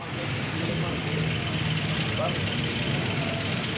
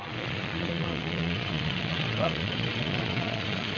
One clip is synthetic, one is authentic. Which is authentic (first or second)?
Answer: first